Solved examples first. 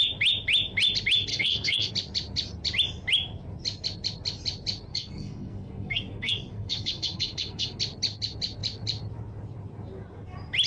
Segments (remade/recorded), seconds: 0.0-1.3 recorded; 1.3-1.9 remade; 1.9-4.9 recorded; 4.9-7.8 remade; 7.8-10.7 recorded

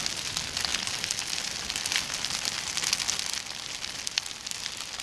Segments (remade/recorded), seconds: 0.0-5.0 recorded

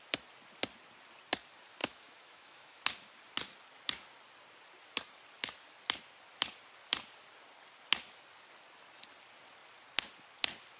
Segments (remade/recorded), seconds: 0.0-1.8 recorded; 1.8-2.8 remade; 2.8-10.8 recorded

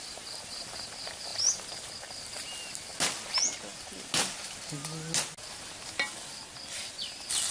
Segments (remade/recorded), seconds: 0.0-7.5 recorded

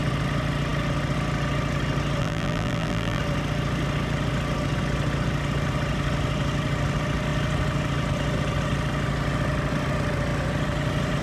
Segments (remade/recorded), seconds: 0.0-2.2 recorded; 2.2-3.2 remade; 3.2-11.2 recorded